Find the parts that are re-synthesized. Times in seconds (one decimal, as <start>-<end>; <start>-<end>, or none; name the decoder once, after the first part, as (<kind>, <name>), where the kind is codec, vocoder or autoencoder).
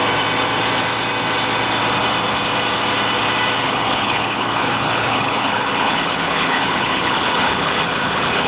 3.6-8.5 (codec, HILCodec)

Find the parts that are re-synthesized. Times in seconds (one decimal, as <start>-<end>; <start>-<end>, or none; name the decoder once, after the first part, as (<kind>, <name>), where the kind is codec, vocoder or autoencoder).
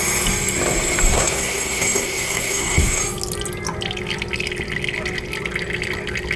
1.1-3.0 (codec, SNAC)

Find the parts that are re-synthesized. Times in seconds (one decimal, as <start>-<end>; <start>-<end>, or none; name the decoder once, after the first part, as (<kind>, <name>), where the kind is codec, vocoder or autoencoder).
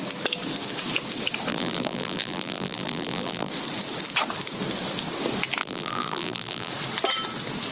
1.5-3.5 (vocoder, BigVGAN v2); 5.6-6.7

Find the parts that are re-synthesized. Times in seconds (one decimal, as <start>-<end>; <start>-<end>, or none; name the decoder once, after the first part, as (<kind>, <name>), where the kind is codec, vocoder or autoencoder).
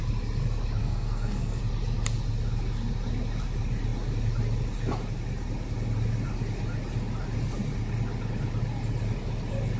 0.8-1.6 (codec, SNAC)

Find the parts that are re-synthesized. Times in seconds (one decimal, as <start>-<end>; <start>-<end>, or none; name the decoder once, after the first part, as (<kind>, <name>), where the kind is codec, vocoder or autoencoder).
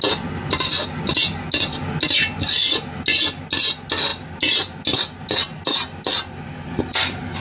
none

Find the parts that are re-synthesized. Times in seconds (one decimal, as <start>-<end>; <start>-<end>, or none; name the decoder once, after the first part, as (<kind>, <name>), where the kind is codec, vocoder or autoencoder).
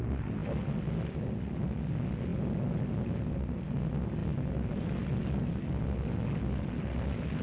none